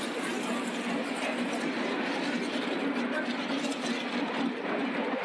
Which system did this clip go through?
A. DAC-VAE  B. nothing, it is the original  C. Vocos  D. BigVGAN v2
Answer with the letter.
B